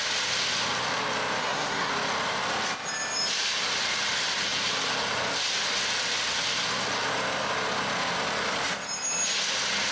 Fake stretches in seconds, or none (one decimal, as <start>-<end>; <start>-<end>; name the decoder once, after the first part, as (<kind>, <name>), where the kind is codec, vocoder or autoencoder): 1.4-1.9 (codec, SNAC)